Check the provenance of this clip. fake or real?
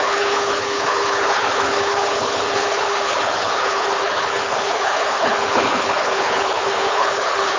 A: fake